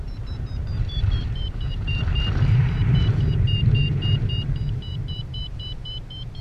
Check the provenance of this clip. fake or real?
fake